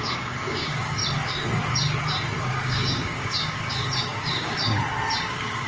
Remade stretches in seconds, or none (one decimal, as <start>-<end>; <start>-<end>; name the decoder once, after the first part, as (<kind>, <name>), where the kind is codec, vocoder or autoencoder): 0.0-1.0 (codec, DAC); 2.4-4.8; 5.3-5.7

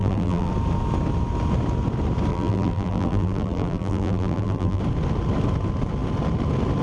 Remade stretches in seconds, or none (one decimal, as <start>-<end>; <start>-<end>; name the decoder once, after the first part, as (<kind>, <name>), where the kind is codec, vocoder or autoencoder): 0.0-0.5 (vocoder, BigVGAN v2); 2.3-4.8

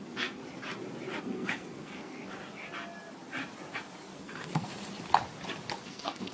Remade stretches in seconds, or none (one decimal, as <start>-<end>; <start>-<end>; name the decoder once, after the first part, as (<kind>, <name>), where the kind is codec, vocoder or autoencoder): 0.0-0.4 (codec, SNAC); 1.2-2.4; 4.1-4.7; 5.8-6.3

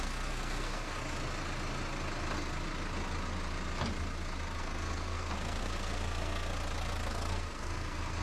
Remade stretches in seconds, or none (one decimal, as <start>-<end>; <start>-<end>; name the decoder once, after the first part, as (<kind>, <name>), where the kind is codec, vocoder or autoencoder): 0.0-1.0 (codec, SNAC); 4.6-6.5; 7.1-8.2